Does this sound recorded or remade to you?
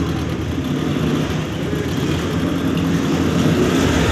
recorded